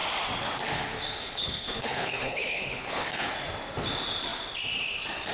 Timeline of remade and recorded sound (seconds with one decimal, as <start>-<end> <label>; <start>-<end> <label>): 0.0-1.2 recorded; 1.2-3.3 remade; 3.3-5.3 recorded